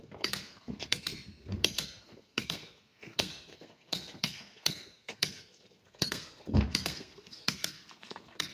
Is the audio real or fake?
fake